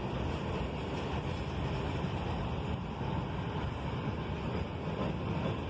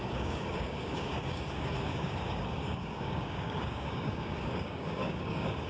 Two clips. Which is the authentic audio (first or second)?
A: first